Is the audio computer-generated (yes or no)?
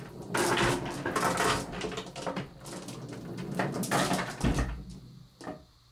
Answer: no